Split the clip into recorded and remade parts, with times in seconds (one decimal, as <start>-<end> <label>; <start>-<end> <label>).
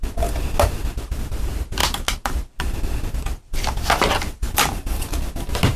0.0-5.8 recorded